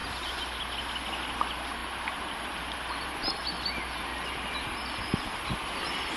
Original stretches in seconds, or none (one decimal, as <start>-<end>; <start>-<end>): 0.0-1.8; 5.5-6.2